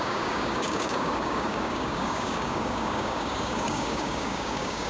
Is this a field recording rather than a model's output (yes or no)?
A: no